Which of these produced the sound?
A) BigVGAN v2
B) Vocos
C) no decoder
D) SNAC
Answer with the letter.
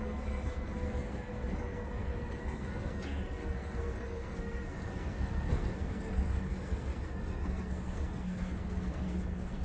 D